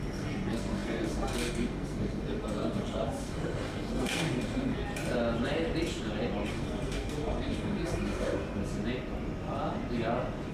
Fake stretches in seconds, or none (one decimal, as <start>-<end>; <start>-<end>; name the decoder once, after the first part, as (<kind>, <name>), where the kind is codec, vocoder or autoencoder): 0.0-4.8 (codec, SNAC); 6.5-8.6

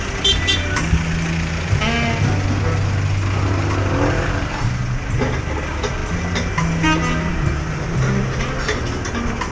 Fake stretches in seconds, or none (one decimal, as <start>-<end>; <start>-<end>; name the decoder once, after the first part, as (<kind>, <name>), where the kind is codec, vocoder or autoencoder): none

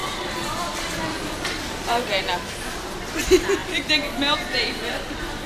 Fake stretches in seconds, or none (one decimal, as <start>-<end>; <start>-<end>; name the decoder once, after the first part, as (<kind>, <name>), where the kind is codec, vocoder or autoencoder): 0.0-2.2 (vocoder, BigVGAN v2)

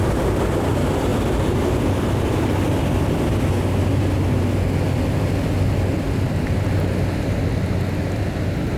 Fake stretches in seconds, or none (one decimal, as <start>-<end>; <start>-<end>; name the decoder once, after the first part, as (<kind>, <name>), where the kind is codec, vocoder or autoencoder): 1.1-2.4 (vocoder, BigVGAN v2)

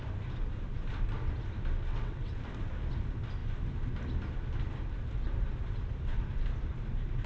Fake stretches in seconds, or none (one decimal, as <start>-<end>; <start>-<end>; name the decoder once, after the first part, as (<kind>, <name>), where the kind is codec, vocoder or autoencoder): 1.9-2.4 (vocoder, WaveNeXt)

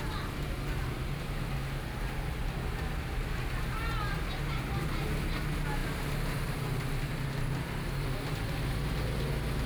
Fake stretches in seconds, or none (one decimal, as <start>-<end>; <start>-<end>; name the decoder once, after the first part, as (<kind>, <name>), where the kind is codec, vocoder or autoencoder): none

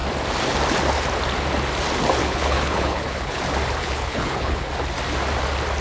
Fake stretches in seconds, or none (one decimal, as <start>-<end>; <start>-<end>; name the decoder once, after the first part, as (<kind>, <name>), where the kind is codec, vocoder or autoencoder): 2.2-3.4 (codec, HILCodec); 3.8-4.7